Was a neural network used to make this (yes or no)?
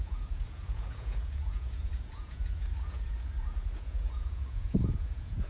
yes